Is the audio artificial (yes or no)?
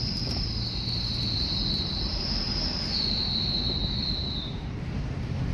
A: yes